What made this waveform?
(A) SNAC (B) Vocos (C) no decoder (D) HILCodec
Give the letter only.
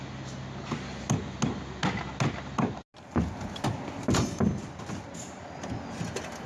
C